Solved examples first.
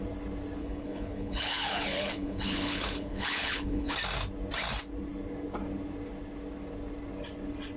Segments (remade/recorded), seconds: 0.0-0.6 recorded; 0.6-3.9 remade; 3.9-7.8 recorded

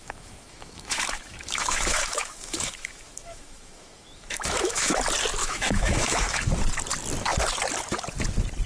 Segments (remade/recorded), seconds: 0.0-5.0 remade; 5.0-5.4 recorded; 5.4-6.4 remade; 6.4-8.7 recorded

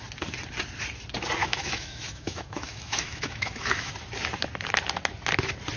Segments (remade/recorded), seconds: 0.0-1.4 recorded; 1.4-3.9 remade; 3.9-5.8 recorded

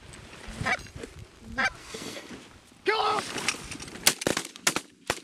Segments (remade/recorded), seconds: 0.0-1.8 recorded; 1.8-2.3 remade; 2.3-5.2 recorded

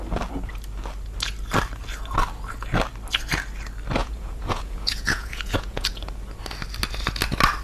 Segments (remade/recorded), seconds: 0.0-4.0 recorded; 4.0-6.1 remade; 6.1-7.6 recorded

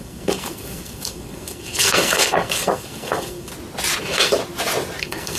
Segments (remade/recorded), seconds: 0.0-3.5 remade; 3.5-4.0 recorded; 4.0-4.4 remade; 4.4-5.0 recorded; 5.0-5.4 remade

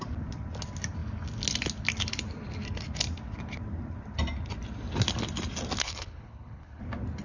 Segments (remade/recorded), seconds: 0.0-5.8 recorded; 5.8-6.8 remade; 6.8-7.2 recorded

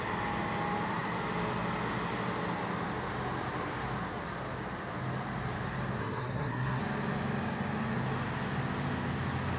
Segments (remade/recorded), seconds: 0.0-6.0 recorded; 6.0-6.8 remade; 6.8-9.6 recorded